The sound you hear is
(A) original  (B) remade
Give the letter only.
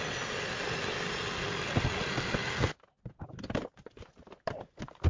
A